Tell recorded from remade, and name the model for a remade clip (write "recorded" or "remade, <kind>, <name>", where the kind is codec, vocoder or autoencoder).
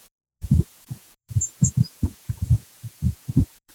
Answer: remade, vocoder, Vocos